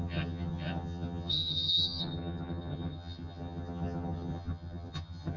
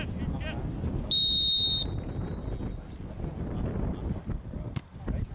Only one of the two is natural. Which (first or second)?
second